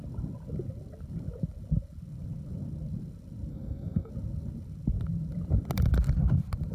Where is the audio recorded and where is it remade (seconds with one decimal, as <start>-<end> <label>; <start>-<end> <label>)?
0.0-3.5 recorded; 3.5-4.1 remade; 4.1-6.7 recorded

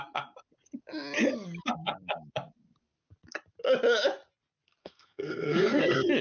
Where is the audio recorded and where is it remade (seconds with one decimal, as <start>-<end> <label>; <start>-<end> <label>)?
0.0-4.8 recorded; 4.8-5.8 remade; 5.8-6.2 recorded

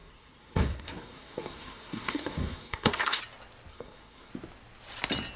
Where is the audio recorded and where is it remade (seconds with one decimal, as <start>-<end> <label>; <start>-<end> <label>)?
0.0-3.2 remade; 3.2-3.7 recorded; 3.7-4.3 remade; 4.3-5.4 recorded

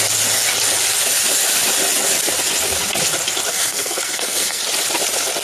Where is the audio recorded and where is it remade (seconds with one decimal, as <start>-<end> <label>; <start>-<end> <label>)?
0.0-3.5 recorded; 3.5-4.6 remade; 4.6-5.4 recorded

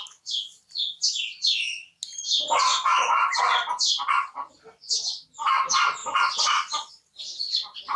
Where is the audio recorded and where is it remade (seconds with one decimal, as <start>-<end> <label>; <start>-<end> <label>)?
0.0-8.0 recorded

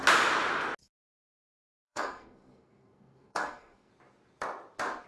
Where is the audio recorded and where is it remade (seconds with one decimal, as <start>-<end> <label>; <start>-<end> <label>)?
0.0-0.8 recorded; 0.8-3.9 remade; 3.9-5.1 recorded

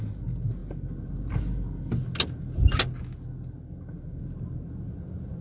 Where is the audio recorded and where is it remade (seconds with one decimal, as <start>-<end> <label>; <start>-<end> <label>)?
0.0-5.4 recorded

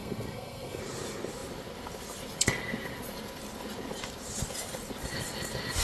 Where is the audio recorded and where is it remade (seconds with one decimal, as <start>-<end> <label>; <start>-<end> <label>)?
0.0-0.8 remade; 0.8-5.8 recorded